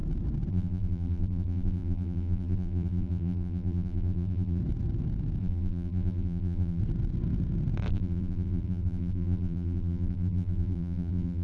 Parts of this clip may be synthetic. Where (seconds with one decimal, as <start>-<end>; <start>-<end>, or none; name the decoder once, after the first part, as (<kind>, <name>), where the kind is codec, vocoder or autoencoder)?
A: 0.5-4.6 (vocoder, BigVGAN v2); 5.4-6.8; 7.9-11.4